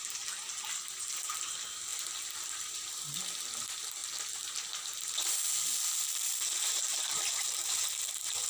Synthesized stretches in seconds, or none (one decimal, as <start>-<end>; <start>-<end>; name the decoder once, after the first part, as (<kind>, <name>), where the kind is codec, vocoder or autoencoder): none